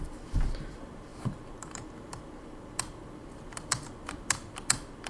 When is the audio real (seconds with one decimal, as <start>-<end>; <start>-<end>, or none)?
0.0-5.1